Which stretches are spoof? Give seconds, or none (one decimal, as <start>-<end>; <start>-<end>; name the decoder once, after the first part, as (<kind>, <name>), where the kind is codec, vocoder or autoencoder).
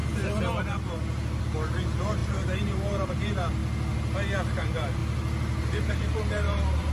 0.0-3.6 (vocoder, BigVGAN v2); 4.6-5.0; 5.9-6.9